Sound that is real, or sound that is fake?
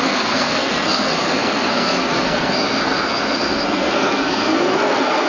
fake